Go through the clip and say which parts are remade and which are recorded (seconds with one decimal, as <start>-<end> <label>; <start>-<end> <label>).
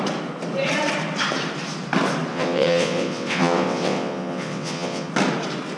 0.0-2.3 recorded; 2.3-5.1 remade; 5.1-5.8 recorded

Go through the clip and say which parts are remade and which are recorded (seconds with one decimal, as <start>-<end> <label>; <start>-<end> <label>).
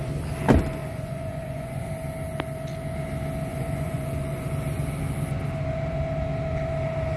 0.0-0.8 recorded; 0.8-1.9 remade; 1.9-3.5 recorded; 3.5-4.5 remade; 4.5-7.2 recorded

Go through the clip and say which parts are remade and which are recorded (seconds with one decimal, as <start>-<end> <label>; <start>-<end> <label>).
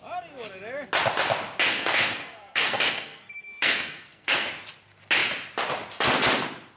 0.0-1.7 recorded; 1.7-4.5 remade; 4.5-6.8 recorded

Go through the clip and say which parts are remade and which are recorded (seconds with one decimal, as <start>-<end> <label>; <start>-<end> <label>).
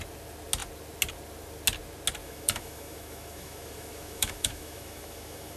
0.0-2.2 recorded; 2.2-5.6 remade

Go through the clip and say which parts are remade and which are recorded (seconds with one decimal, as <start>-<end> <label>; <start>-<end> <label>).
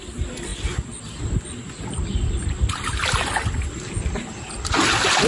0.0-5.3 recorded